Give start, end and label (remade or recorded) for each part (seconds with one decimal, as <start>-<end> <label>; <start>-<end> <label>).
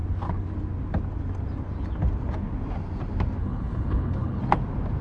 0.0-3.4 recorded; 3.4-4.4 remade; 4.4-5.0 recorded